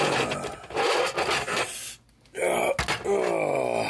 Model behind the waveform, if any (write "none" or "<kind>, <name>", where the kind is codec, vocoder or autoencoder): none